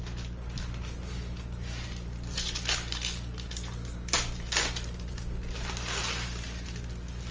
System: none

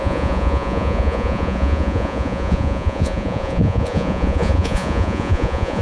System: vocoder, Vocos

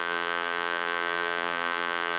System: vocoder, BigVGAN v2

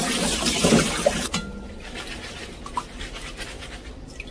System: none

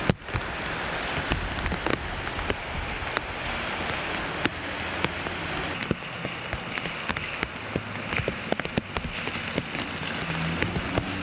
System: none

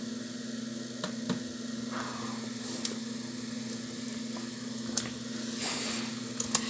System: none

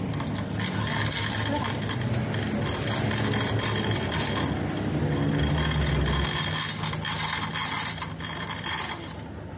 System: none